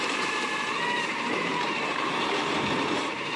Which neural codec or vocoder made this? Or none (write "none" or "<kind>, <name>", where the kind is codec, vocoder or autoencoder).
vocoder, BigVGAN v2